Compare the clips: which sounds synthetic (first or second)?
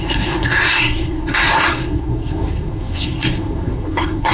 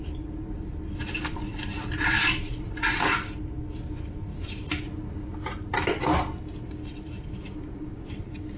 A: first